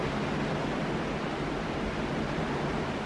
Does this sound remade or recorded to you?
recorded